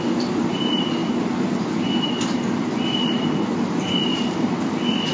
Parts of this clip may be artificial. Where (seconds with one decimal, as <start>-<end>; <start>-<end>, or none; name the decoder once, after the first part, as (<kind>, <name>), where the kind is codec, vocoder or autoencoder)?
none